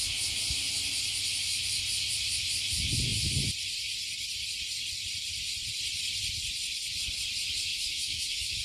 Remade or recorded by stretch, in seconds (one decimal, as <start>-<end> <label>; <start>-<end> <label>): 0.0-7.7 recorded; 7.7-8.6 remade